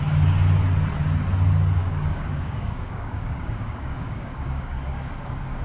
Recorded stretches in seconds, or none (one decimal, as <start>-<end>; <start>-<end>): 0.0-1.8